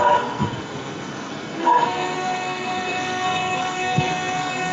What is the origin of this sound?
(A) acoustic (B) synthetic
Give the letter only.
B